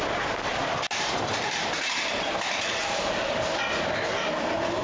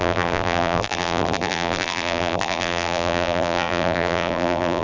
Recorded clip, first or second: first